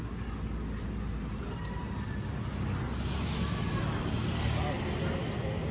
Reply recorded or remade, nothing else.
recorded